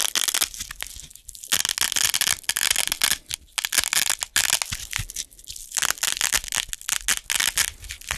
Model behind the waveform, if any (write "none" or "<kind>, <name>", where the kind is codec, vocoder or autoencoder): none